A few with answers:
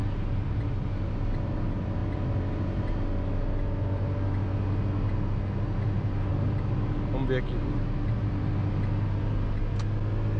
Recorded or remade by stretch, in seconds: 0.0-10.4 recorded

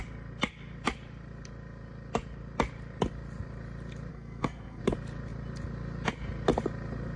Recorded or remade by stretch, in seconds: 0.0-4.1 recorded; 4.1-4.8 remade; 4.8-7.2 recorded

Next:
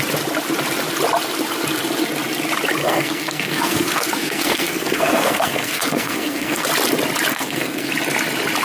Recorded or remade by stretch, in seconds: 0.0-2.8 recorded; 2.8-6.7 remade; 6.7-7.3 recorded; 7.3-7.9 remade; 7.9-8.6 recorded